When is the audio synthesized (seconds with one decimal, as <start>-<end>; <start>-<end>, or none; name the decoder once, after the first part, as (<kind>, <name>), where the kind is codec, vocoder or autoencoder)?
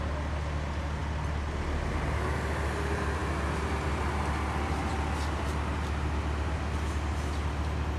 none